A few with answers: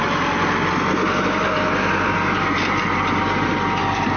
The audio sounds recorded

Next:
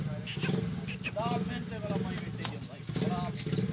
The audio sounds recorded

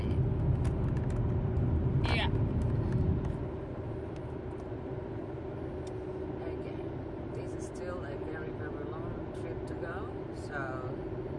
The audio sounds recorded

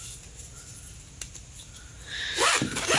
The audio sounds recorded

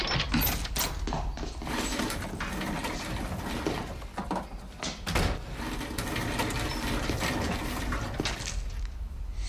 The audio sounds recorded